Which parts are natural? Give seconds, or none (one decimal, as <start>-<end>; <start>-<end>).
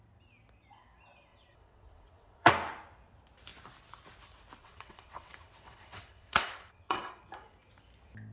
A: 0.0-1.3; 2.5-4.6; 7.2-8.3